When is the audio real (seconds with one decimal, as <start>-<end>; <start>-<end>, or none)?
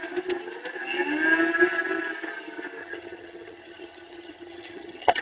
0.0-2.8